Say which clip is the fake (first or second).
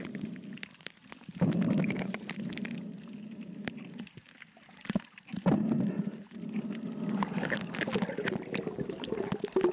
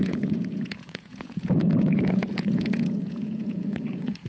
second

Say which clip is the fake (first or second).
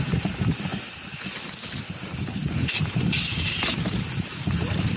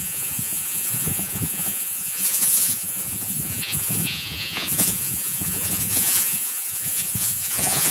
second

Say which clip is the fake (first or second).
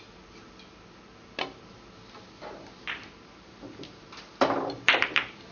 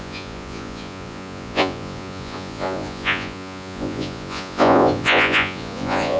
second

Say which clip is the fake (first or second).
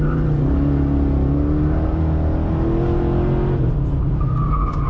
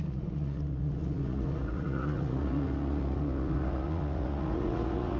second